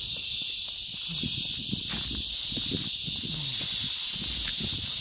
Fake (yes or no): no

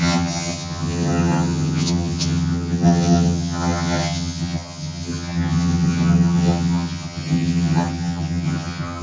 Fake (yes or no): yes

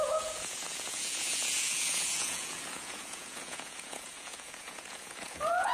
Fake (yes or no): yes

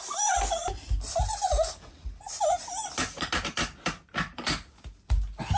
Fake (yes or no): no